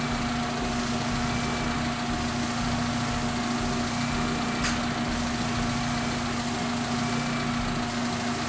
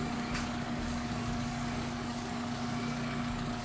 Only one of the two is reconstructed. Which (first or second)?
second